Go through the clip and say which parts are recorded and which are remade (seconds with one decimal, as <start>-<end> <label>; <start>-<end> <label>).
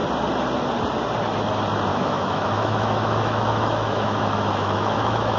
0.0-1.9 recorded; 1.9-5.4 remade